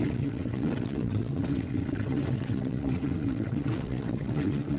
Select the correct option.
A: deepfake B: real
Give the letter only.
A